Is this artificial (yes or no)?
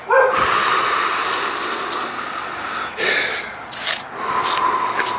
no